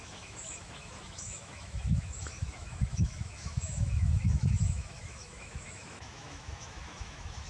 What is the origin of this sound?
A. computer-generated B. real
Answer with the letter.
A